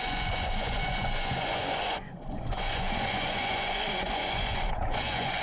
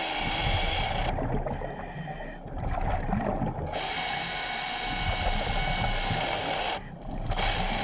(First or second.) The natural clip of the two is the second